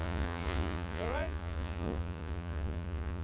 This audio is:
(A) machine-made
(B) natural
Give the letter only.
A